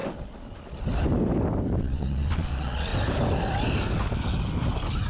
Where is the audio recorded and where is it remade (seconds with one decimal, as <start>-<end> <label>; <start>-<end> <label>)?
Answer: 0.0-1.8 recorded; 1.8-2.9 remade; 2.9-5.1 recorded